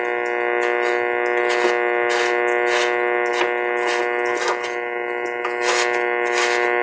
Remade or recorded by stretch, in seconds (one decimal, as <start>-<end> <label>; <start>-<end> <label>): 0.0-6.8 recorded